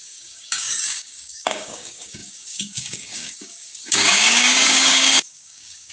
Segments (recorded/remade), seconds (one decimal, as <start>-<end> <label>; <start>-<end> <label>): 0.0-5.9 remade